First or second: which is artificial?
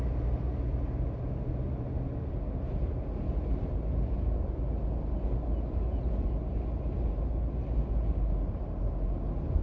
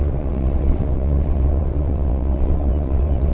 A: second